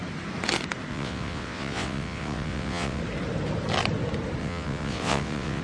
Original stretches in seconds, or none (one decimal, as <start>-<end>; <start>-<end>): 0.0-0.9; 3.0-4.4